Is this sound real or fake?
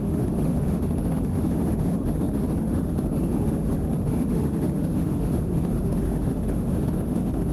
fake